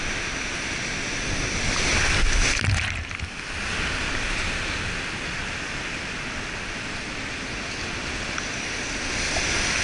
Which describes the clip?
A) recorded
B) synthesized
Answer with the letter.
A